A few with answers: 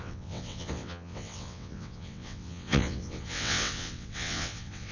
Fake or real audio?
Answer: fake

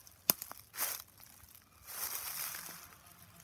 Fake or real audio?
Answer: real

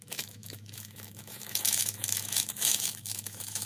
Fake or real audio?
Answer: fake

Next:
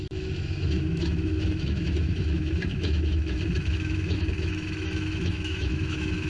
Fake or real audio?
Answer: fake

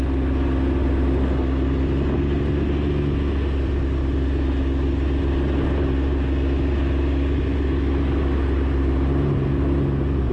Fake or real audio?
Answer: real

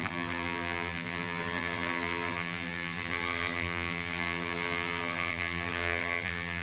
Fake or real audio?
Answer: fake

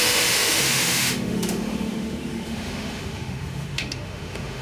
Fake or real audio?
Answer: fake